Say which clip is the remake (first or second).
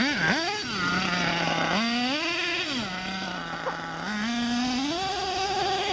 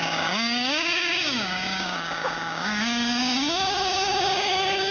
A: second